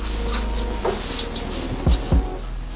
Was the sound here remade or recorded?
recorded